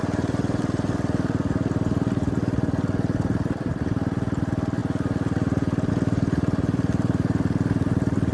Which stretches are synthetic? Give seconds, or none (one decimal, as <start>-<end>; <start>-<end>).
none